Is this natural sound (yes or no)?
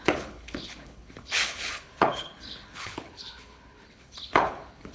no